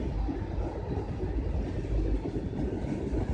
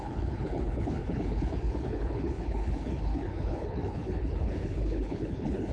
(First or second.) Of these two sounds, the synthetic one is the second